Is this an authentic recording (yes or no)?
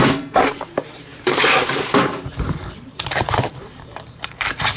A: no